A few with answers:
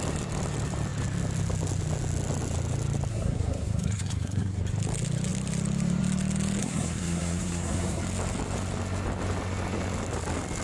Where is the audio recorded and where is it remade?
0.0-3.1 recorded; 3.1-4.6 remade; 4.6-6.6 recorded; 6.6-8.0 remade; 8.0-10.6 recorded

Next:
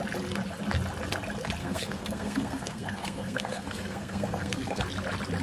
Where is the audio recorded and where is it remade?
0.0-1.6 recorded; 1.6-4.8 remade; 4.8-5.4 recorded

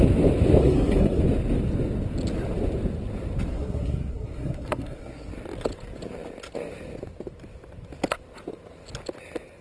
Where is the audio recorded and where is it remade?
0.0-0.6 recorded; 0.6-1.2 remade; 1.2-3.5 recorded; 3.5-5.3 remade; 5.3-9.6 recorded

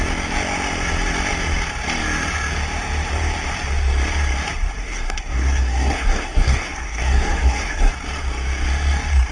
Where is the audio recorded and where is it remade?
0.0-4.8 recorded; 4.8-7.9 remade; 7.9-9.3 recorded

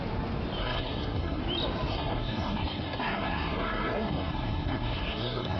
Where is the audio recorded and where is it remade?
0.0-0.6 recorded; 0.6-1.4 remade; 1.4-1.9 recorded; 1.9-5.6 remade

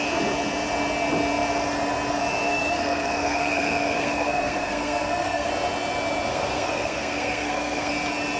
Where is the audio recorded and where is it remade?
0.0-2.5 recorded; 2.5-5.5 remade; 5.5-6.3 recorded; 6.3-7.9 remade; 7.9-8.4 recorded